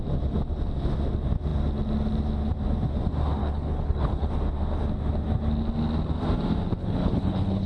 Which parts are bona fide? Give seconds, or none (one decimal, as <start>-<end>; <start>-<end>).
0.0-3.4; 4.3-6.8